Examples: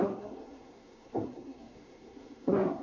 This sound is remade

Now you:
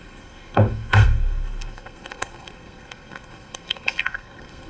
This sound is remade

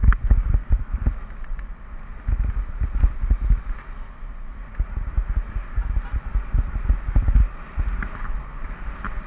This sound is recorded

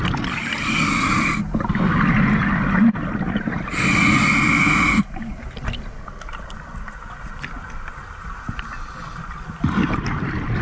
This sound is recorded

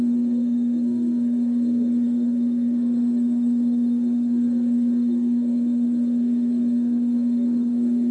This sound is remade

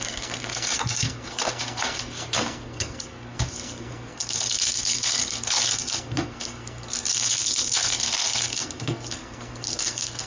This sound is remade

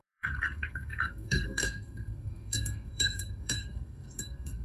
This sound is remade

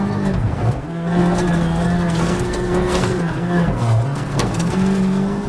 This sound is remade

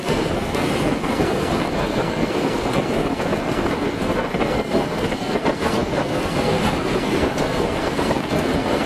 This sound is remade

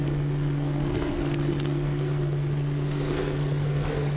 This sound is remade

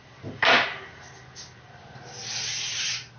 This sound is recorded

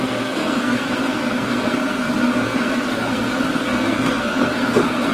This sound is remade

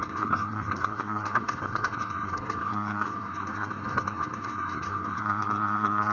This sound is remade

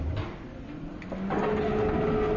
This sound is recorded